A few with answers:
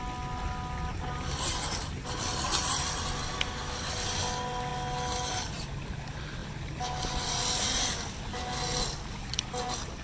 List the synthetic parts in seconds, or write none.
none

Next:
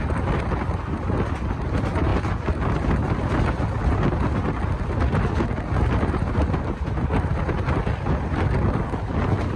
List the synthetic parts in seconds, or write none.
none